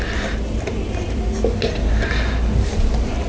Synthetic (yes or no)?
no